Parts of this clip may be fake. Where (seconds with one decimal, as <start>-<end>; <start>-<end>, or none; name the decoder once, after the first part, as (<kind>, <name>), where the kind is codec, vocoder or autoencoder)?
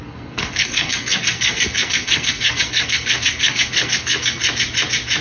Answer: 0.0-4.4 (codec, SNAC)